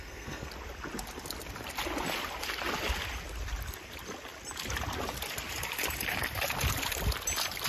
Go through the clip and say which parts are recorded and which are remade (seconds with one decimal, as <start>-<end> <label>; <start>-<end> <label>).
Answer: 0.0-0.5 remade; 0.5-7.7 recorded